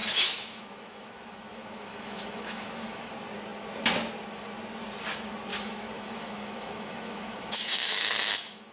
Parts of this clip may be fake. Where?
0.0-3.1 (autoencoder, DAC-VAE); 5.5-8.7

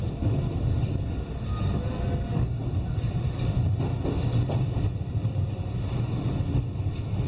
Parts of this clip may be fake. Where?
none

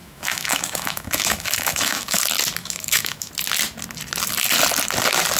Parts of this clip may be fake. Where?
0.0-2.2 (autoencoder, DAC-VAE); 2.6-3.3

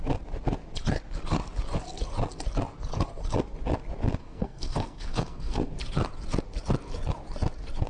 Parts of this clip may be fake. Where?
4.2-5.7 (codec, SNAC)

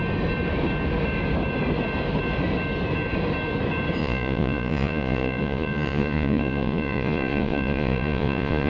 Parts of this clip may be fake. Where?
4.0-8.7 (vocoder, Vocos)

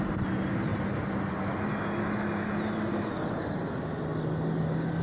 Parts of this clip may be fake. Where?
none

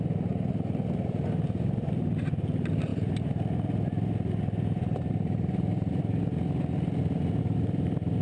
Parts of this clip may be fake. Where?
none

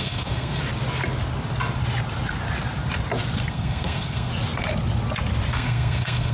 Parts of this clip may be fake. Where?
0.0-0.6 (codec, SNAC); 3.5-4.3; 5.5-6.3